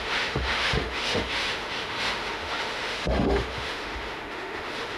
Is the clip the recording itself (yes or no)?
no